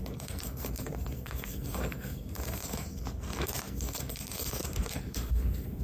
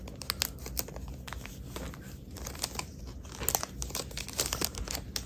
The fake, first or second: first